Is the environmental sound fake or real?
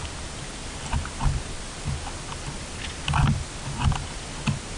real